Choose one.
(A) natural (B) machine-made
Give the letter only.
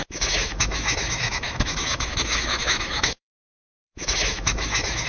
B